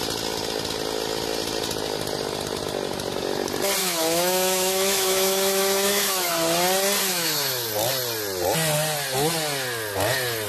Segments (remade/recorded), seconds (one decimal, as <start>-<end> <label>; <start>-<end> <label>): 0.0-3.8 recorded; 3.8-6.3 remade; 6.3-7.0 recorded; 7.0-7.7 remade; 7.7-10.5 recorded